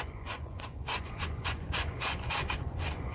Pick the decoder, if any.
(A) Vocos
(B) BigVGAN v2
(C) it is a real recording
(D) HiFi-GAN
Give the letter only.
A